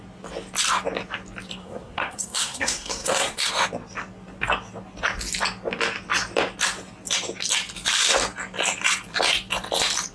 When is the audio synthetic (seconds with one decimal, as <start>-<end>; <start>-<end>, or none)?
1.6-3.5